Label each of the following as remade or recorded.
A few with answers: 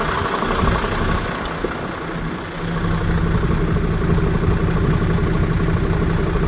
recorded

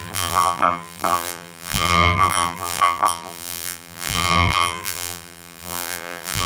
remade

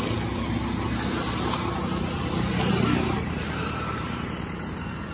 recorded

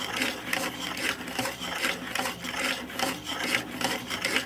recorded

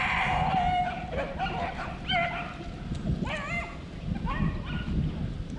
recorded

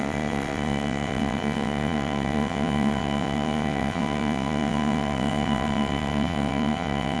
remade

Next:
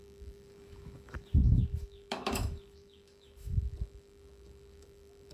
remade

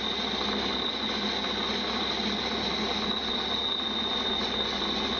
recorded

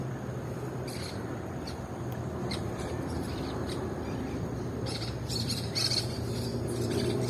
remade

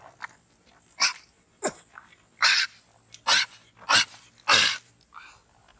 recorded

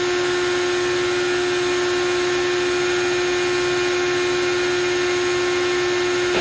recorded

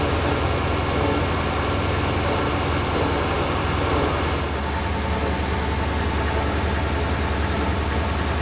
recorded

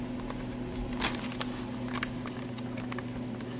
recorded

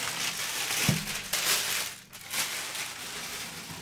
recorded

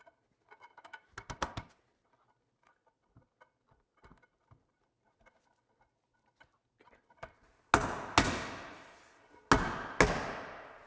recorded